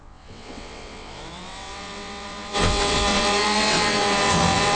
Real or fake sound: fake